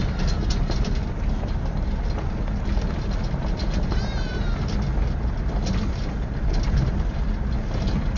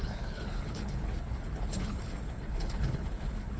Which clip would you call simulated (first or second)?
second